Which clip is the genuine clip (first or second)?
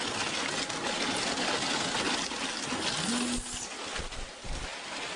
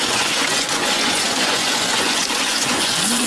first